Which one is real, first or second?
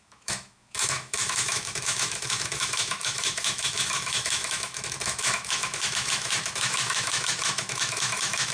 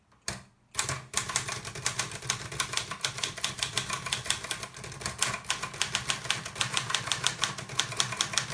second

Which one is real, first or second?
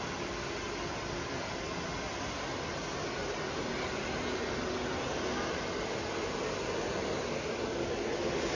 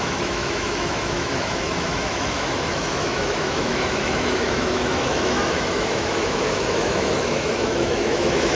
first